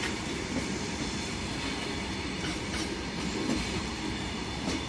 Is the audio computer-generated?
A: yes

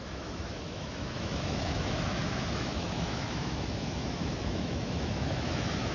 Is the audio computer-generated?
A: yes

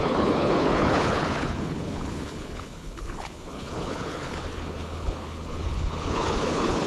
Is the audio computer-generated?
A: yes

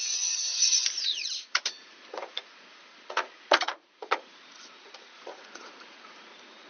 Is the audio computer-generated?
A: yes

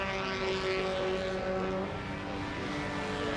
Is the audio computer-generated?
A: no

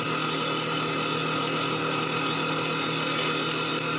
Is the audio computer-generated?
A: no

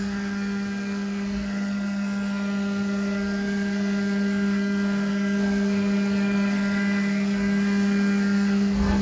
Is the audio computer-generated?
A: yes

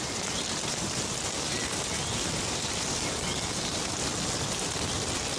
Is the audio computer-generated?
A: no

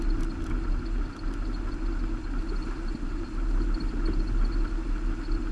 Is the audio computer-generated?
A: no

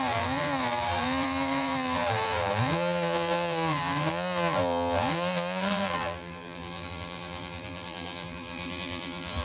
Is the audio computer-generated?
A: yes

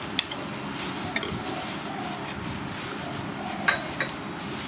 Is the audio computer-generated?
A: no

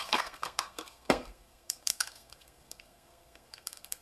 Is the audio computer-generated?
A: yes